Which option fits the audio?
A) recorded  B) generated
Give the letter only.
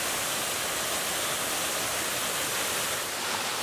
A